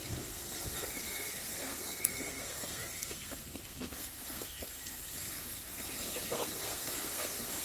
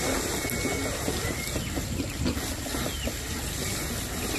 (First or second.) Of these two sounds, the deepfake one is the first